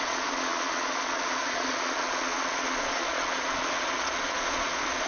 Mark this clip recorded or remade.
remade